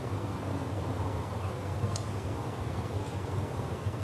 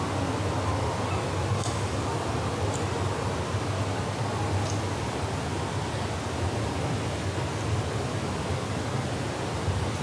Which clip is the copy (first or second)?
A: first